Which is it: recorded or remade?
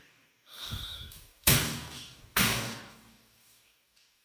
remade